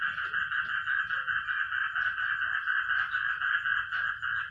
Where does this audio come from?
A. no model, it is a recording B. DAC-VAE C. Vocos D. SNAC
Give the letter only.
A